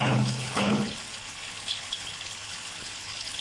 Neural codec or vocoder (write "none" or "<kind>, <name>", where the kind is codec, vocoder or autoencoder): codec, HILCodec